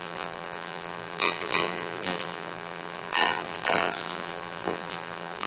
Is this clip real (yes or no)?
no